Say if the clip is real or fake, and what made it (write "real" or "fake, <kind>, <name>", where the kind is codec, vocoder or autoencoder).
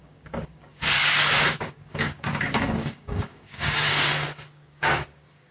fake, codec, DAC